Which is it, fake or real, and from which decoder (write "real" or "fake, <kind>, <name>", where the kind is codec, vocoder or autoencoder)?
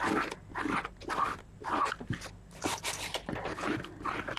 real